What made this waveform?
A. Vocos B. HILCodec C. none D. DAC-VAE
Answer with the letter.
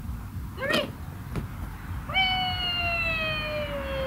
C